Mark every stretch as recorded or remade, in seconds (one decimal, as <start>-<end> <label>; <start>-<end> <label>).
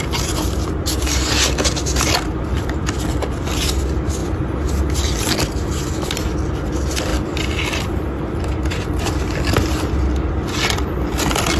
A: 0.0-11.6 recorded